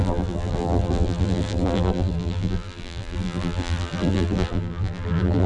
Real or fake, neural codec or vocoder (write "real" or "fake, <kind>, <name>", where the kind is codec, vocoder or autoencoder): fake, vocoder, BigVGAN v2